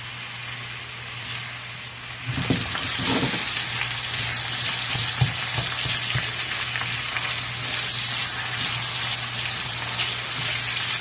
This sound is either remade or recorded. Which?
recorded